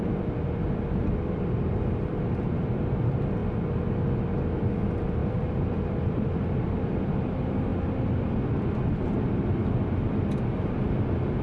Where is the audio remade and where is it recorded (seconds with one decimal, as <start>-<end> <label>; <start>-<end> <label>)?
0.0-11.4 recorded